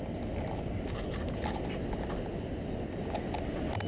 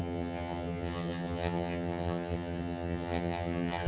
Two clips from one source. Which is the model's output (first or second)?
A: second